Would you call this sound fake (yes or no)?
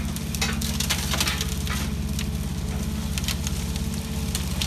no